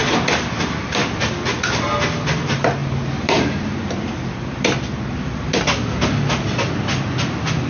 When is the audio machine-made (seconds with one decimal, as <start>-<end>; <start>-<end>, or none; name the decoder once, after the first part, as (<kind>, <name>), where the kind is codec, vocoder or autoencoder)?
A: 2.8-3.9 (vocoder, BigVGAN v2)